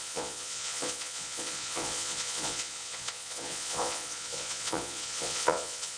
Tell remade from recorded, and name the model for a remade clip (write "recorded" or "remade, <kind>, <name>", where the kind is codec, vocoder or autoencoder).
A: remade, vocoder, Vocos